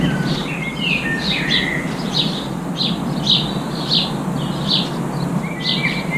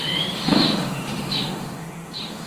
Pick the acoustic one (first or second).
first